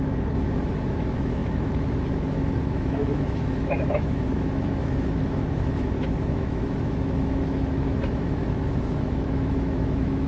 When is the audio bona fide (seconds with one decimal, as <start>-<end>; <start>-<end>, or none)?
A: none